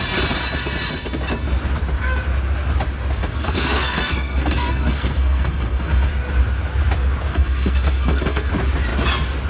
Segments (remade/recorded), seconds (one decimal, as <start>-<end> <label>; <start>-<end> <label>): 0.0-3.2 recorded; 3.2-6.1 remade; 6.1-7.3 recorded; 7.3-8.5 remade; 8.5-9.5 recorded